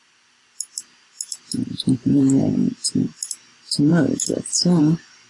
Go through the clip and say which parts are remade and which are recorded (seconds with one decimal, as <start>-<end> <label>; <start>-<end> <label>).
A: 0.0-5.3 recorded